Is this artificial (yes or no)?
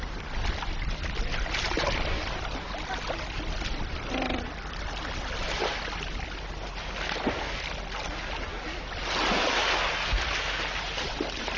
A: no